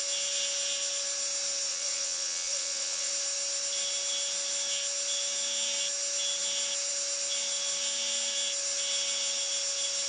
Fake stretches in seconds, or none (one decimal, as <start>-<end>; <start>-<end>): 1.7-3.1